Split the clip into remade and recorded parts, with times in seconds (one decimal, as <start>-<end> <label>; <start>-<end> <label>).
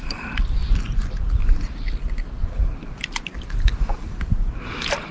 0.0-5.1 recorded